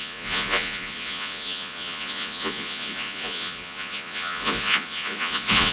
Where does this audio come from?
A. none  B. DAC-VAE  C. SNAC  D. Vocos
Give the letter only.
D